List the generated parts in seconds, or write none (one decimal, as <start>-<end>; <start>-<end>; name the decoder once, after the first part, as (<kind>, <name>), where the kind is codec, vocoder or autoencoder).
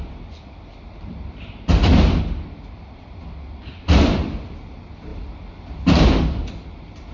none